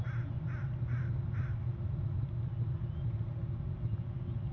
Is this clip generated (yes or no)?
no